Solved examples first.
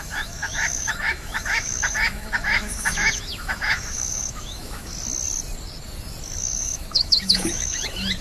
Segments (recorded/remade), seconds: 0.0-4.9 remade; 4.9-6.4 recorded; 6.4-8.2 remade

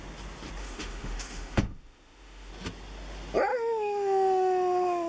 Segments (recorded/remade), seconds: 0.0-0.6 recorded; 0.6-2.5 remade; 2.5-3.5 recorded; 3.5-5.1 remade

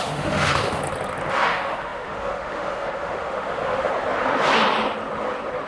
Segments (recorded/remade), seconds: 0.0-0.8 remade; 0.8-1.3 recorded; 1.3-3.9 remade; 3.9-5.7 recorded

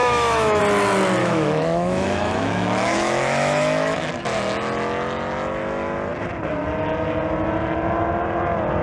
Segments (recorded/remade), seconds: 0.0-0.6 remade; 0.6-1.2 recorded; 1.2-4.1 remade; 4.1-8.8 recorded

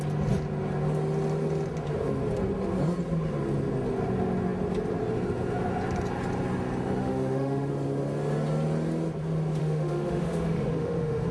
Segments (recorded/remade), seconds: 0.0-7.0 recorded; 7.0-7.7 remade; 7.7-9.6 recorded; 9.6-11.3 remade

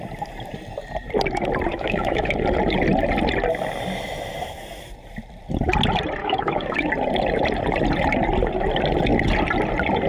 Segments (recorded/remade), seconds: 0.0-1.7 recorded; 1.7-2.3 remade; 2.3-6.2 recorded; 6.2-6.9 remade; 6.9-10.1 recorded

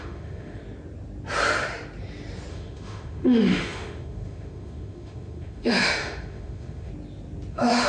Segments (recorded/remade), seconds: 0.0-0.6 remade; 0.6-2.5 recorded; 2.5-6.9 remade; 6.9-7.5 recorded; 7.5-7.9 remade

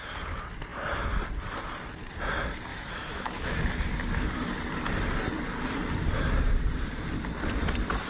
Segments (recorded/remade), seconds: 0.0-2.7 recorded; 2.7-3.6 remade; 3.6-8.1 recorded